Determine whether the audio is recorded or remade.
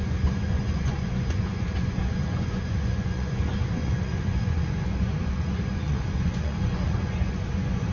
remade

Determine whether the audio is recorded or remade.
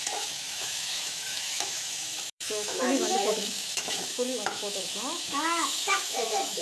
remade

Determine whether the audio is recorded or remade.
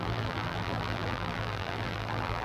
remade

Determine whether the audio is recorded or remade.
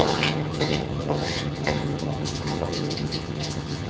remade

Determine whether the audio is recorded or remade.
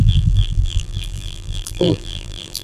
remade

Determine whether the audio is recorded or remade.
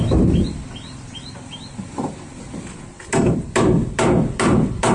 remade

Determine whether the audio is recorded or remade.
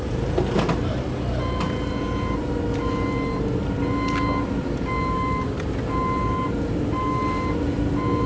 recorded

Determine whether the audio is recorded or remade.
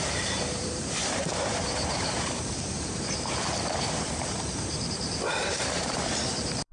remade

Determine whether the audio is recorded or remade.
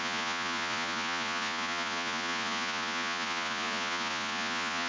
remade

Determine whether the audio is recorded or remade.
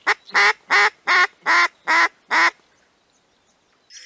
recorded